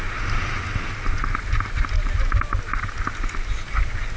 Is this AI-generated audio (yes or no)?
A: no